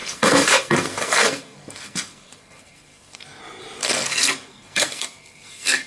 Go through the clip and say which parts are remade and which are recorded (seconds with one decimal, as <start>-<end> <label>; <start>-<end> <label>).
0.0-3.4 remade; 3.4-3.8 recorded; 3.8-5.9 remade